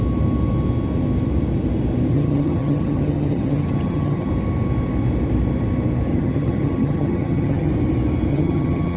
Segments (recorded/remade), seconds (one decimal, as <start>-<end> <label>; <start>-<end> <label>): 0.0-2.1 recorded; 2.1-4.3 remade; 4.3-6.1 recorded; 6.1-7.7 remade; 7.7-8.3 recorded; 8.3-9.0 remade